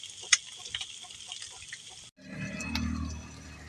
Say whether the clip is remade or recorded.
recorded